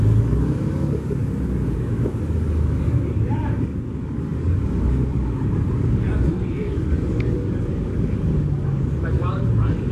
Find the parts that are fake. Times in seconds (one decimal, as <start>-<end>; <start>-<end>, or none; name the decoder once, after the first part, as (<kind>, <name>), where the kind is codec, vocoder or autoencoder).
0.0-9.9 (codec, DAC)